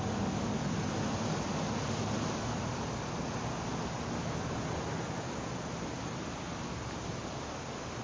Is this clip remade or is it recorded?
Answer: recorded